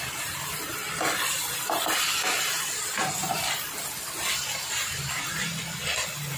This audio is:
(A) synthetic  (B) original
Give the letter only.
B